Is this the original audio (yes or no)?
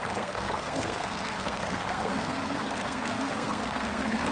no